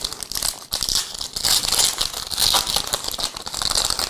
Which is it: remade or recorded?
recorded